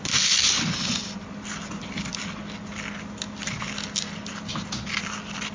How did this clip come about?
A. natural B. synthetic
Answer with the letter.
A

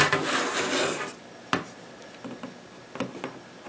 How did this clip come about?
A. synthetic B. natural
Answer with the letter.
B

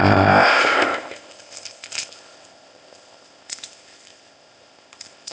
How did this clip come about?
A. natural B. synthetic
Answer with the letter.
B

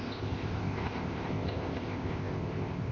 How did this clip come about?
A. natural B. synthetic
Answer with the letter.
B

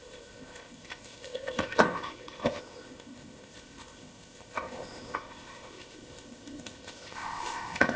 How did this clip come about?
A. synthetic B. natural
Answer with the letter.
A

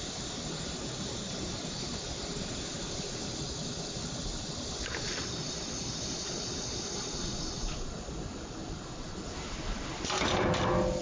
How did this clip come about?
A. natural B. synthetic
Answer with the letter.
A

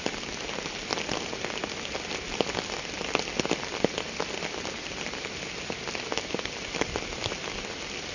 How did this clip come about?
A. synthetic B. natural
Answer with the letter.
B